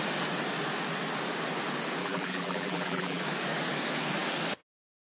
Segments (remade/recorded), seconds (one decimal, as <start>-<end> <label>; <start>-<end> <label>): 0.0-2.0 recorded; 2.0-3.2 remade; 3.2-5.0 recorded